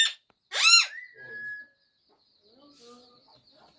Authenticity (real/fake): real